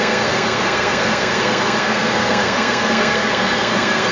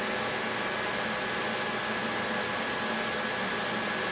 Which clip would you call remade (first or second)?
first